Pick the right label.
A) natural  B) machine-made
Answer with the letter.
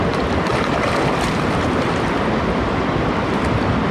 B